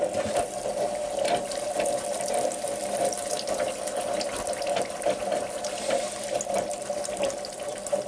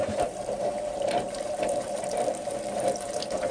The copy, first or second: second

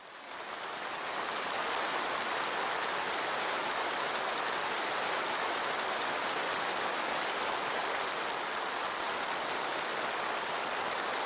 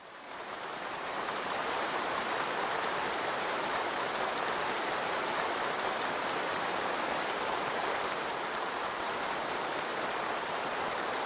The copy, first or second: second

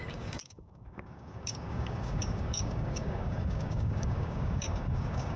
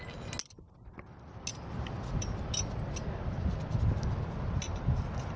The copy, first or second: first